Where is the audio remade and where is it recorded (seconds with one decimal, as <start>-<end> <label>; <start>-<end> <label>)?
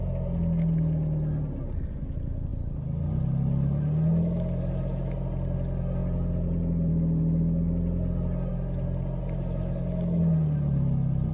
0.0-6.0 recorded; 6.0-6.9 remade; 6.9-11.3 recorded